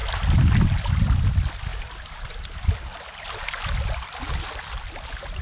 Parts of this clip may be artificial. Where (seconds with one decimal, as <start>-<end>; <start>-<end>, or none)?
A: none